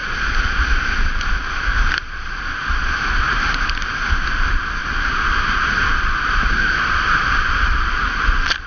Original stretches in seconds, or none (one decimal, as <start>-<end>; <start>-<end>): 0.0-8.7

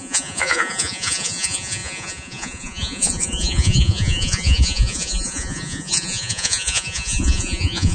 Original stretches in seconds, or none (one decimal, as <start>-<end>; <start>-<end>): none